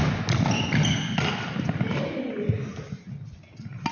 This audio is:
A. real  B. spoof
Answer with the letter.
A